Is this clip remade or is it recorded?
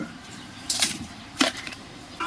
remade